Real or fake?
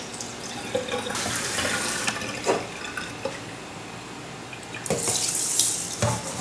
real